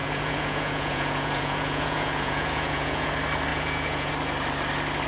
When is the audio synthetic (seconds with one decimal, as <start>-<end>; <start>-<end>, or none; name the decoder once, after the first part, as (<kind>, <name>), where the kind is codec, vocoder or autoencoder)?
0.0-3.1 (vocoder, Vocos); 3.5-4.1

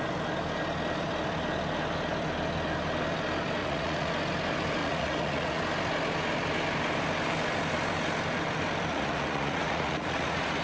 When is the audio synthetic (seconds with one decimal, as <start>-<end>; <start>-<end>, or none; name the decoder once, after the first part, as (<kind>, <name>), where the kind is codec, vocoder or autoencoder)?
3.6-4.1 (vocoder, Vocos); 4.8-5.6; 8.9-10.6

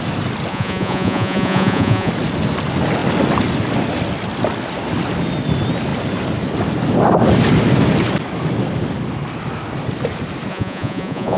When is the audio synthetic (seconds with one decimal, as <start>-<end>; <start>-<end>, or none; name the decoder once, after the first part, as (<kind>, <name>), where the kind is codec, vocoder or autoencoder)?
0.5-2.1 (vocoder, Vocos); 10.5-11.4